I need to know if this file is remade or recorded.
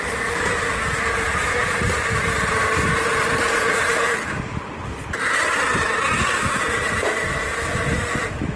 recorded